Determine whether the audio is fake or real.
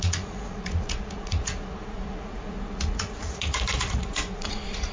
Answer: fake